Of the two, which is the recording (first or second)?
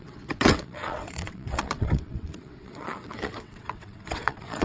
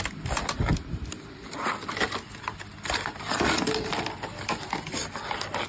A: second